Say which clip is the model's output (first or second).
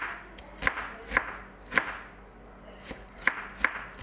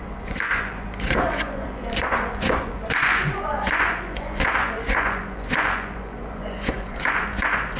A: second